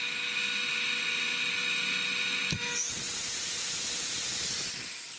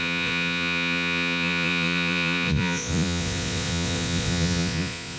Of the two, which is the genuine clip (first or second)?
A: first